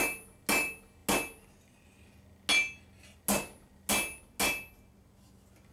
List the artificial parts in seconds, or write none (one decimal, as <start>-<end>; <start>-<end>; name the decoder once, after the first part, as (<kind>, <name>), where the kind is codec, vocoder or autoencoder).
none